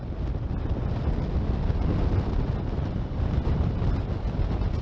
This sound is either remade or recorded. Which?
recorded